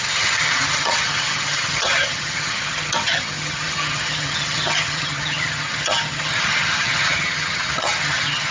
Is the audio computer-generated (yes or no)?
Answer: yes